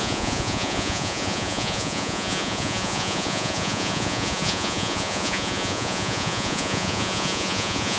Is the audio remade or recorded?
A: remade